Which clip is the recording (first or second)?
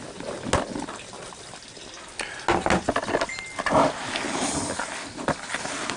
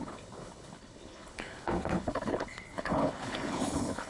first